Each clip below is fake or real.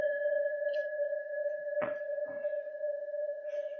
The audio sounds fake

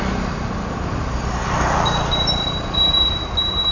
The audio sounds real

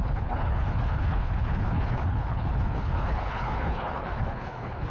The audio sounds fake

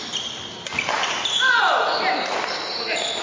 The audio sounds real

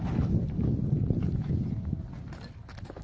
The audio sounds real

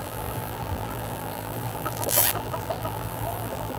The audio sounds fake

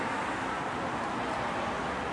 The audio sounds real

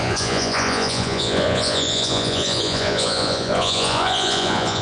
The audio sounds fake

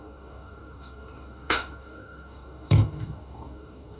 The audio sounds fake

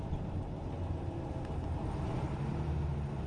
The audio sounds real